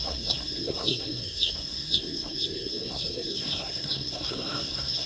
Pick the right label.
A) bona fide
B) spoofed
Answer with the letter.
B